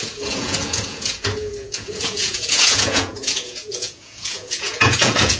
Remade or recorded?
remade